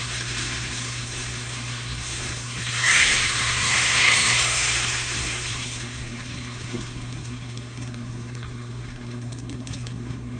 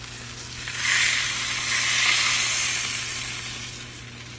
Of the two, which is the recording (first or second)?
second